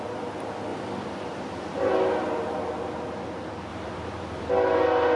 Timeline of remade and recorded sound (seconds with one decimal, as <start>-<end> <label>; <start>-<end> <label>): 0.0-0.7 recorded; 0.7-1.9 remade; 1.9-3.7 recorded; 3.7-4.5 remade; 4.5-5.2 recorded